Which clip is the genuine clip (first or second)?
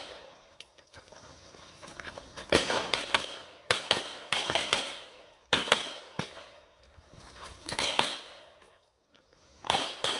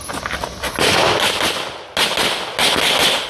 second